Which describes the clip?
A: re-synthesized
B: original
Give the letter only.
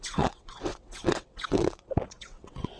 A